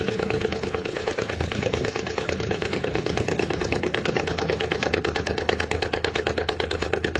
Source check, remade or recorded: remade